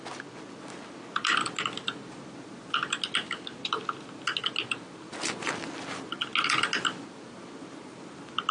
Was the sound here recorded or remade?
recorded